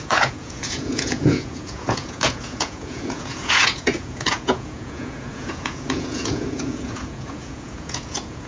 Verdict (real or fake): fake